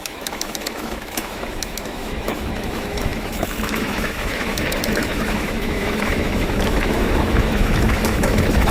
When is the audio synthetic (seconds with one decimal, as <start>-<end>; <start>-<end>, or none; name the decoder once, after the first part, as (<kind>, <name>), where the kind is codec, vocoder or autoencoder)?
0.0-8.7 (autoencoder, DAC-VAE)